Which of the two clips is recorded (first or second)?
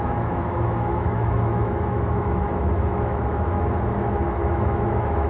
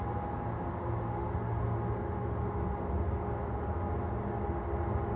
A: second